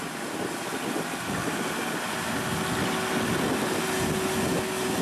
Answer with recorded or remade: recorded